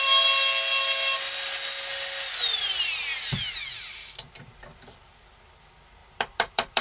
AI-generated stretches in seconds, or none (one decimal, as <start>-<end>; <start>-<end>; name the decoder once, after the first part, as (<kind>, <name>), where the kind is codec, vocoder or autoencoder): 6.0-6.8 (vocoder, BigVGAN v2)